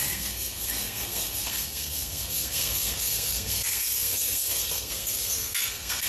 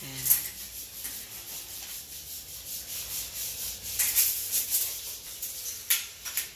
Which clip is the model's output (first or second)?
first